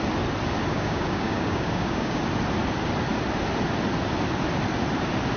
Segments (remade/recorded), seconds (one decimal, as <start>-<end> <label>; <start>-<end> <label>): 0.0-0.7 recorded; 0.7-2.2 remade; 2.2-5.4 recorded